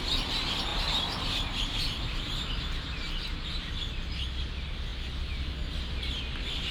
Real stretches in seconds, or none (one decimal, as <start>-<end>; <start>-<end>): 0.0-0.7; 3.1-6.7

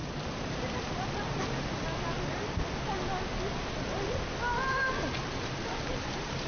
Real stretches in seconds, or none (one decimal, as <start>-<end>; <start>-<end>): 1.8-5.7

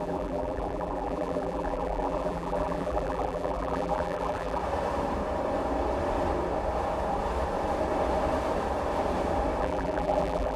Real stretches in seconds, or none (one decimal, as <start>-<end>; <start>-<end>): 4.6-9.6

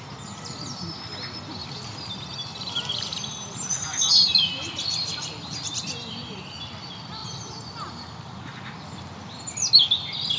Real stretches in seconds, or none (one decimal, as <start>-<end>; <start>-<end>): 0.0-1.6; 4.5-10.4

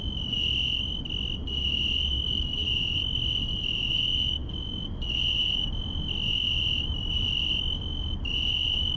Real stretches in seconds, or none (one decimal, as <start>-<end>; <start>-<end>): 0.0-2.6; 3.9-4.4; 8.3-9.0

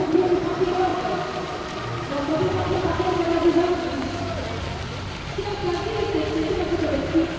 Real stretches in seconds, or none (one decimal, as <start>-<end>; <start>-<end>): 0.9-2.0; 4.4-5.0; 5.6-6.5